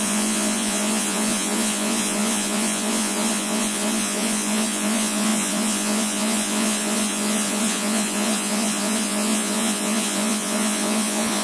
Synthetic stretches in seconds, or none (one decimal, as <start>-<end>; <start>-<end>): 0.0-11.4